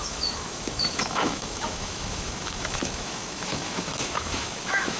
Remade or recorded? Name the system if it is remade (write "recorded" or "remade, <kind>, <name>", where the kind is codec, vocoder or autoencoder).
remade, autoencoder, DAC-VAE